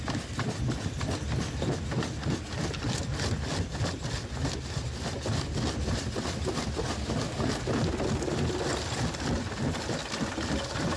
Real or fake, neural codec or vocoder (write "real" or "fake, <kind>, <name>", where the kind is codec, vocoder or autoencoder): real